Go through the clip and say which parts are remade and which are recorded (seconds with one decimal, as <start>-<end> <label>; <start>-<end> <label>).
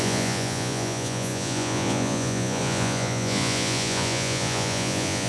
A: 0.0-5.3 remade